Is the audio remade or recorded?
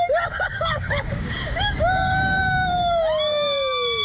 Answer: remade